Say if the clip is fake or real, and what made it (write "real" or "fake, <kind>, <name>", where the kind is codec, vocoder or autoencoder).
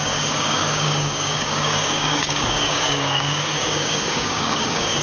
fake, codec, DAC